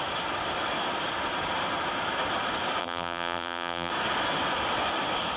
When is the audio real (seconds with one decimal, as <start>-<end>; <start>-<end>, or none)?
0.0-2.8; 3.9-5.4